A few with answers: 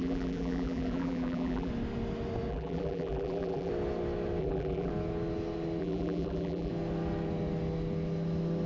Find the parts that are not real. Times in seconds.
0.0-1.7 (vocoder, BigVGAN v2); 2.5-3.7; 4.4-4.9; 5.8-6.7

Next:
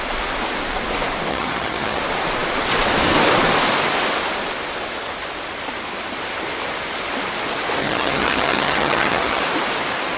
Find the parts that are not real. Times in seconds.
1.3-2.0 (vocoder, HiFi-GAN); 7.8-9.4